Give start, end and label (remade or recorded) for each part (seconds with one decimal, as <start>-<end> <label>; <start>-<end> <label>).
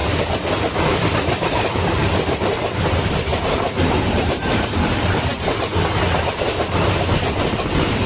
0.0-0.5 recorded; 0.5-3.3 remade; 3.3-4.1 recorded; 4.1-5.3 remade; 5.3-6.0 recorded; 6.0-8.1 remade